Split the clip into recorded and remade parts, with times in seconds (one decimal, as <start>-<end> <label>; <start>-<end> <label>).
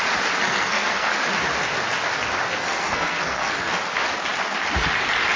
0.0-0.4 recorded; 0.4-1.1 remade; 1.1-2.6 recorded; 2.6-3.7 remade; 3.7-5.4 recorded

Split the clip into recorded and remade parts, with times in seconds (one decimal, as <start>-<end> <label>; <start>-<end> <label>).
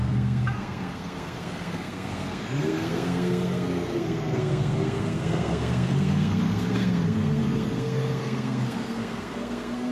0.0-9.9 remade